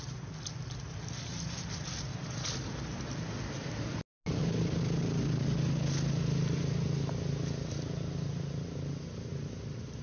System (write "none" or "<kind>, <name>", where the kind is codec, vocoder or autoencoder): none